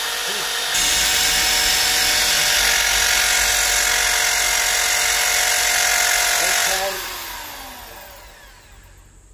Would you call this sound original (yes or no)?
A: yes